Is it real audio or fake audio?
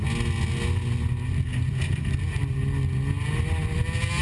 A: real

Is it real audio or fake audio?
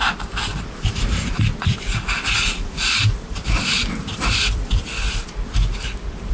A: fake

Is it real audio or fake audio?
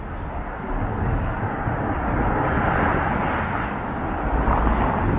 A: real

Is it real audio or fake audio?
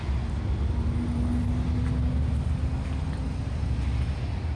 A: real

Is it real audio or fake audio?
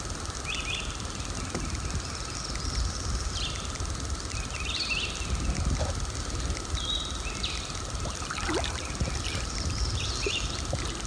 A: real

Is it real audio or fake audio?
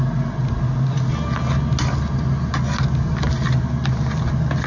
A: real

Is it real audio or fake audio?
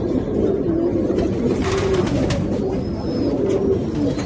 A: real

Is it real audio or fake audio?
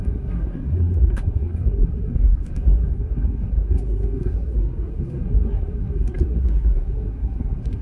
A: fake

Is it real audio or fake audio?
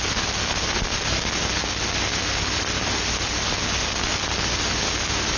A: real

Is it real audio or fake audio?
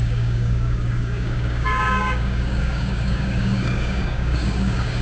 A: fake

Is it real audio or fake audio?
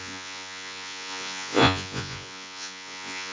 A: fake